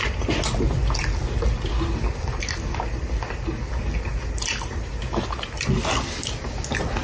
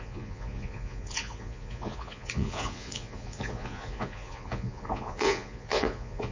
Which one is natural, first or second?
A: first